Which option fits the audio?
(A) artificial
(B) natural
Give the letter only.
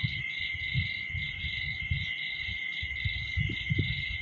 B